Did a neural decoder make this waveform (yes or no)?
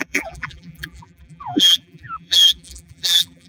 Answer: yes